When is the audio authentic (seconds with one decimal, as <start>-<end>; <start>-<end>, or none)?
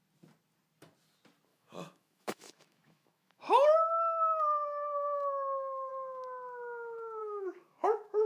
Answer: 0.0-1.5; 5.9-7.2